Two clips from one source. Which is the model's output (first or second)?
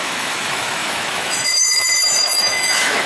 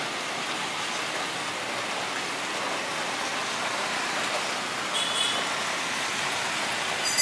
first